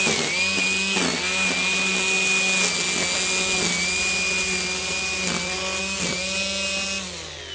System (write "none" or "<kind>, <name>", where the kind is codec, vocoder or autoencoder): none